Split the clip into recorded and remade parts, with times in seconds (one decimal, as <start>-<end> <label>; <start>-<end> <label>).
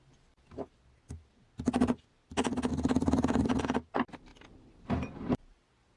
0.0-2.7 recorded; 2.7-3.6 remade; 3.6-4.3 recorded; 4.3-5.5 remade; 5.5-6.0 recorded